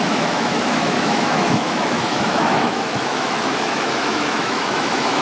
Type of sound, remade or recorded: remade